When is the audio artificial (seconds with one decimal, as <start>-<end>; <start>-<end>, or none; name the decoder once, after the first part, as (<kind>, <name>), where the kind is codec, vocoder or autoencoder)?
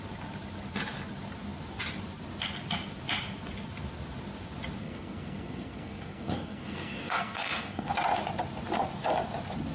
4.8-7.9 (codec, SNAC)